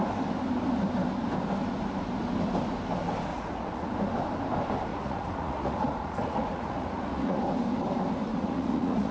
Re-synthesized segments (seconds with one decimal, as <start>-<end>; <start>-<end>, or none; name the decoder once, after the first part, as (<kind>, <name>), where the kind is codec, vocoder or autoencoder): 3.3-3.9 (vocoder, Vocos); 4.9-7.4; 8.3-9.1